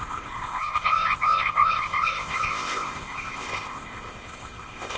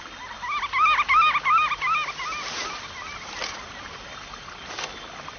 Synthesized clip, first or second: first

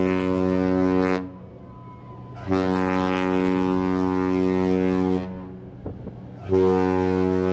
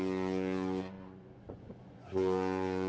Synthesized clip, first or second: second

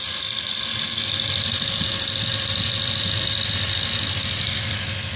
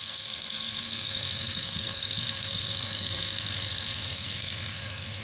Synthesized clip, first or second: second